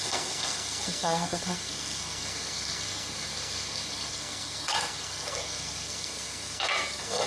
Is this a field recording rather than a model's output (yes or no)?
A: no